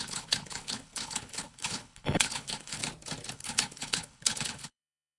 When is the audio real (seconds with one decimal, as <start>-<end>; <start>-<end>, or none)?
2.8-3.3